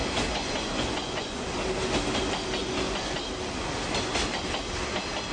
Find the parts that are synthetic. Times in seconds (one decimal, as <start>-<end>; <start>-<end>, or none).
0.0-1.5; 2.6-3.2